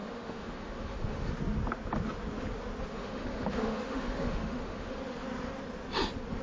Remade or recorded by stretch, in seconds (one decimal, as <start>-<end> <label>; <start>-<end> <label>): 0.0-1.3 remade; 1.3-2.9 recorded; 2.9-5.0 remade; 5.0-6.4 recorded